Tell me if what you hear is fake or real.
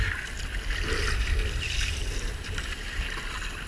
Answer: real